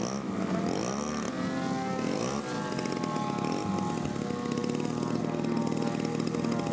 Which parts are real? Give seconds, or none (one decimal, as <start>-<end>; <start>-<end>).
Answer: 0.0-6.7